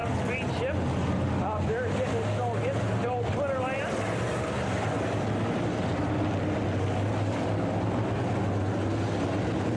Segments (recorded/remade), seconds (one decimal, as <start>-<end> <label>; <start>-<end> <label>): 0.0-9.8 recorded